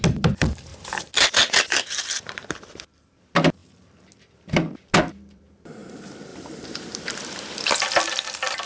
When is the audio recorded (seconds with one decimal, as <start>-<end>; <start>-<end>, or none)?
0.0-0.7; 3.1-6.3